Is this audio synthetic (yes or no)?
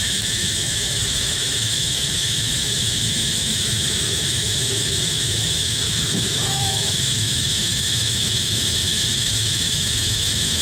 yes